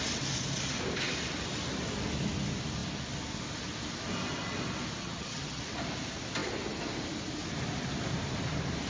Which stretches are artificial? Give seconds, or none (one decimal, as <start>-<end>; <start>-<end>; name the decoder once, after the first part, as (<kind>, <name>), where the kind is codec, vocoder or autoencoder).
5.0-5.6 (vocoder, HiFi-GAN)